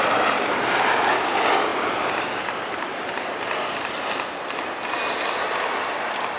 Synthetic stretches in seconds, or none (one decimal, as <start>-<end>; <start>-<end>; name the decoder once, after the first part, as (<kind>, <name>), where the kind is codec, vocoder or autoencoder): none